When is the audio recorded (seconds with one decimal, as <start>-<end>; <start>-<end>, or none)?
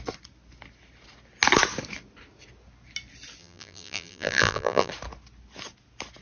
0.0-3.4; 4.9-6.2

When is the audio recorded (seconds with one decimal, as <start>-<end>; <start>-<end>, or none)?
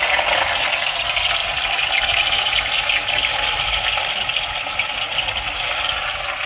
0.0-6.5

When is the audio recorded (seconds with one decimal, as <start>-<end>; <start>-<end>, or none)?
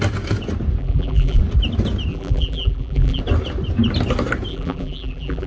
0.0-0.8; 1.4-2.1; 3.2-4.5